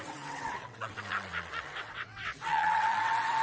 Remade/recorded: remade